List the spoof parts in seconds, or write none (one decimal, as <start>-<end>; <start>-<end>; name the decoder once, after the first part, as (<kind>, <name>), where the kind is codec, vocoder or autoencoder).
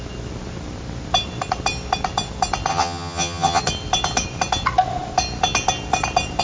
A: 2.7-3.6 (vocoder, HiFi-GAN)